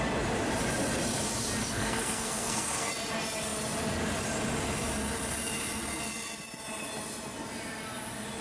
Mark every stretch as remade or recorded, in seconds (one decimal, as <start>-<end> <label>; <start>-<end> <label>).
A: 0.0-1.6 recorded; 1.6-2.9 remade; 2.9-8.4 recorded